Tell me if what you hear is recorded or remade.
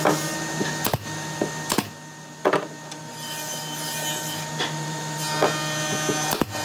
recorded